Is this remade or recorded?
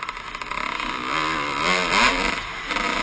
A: recorded